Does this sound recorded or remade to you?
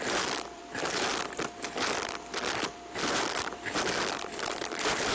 remade